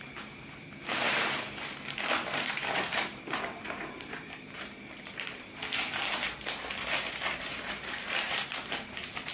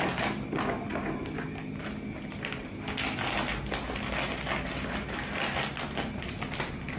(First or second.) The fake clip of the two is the first